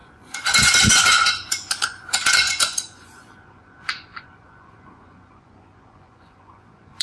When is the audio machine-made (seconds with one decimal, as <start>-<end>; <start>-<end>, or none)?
0.0-7.0